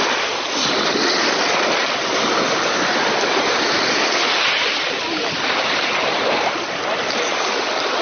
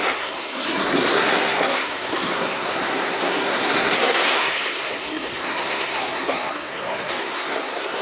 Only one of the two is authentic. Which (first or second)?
first